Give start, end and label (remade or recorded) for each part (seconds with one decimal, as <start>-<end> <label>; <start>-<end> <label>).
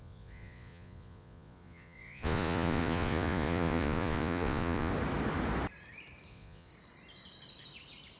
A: 0.0-4.9 remade; 4.9-6.3 recorded; 6.3-6.7 remade; 6.7-8.2 recorded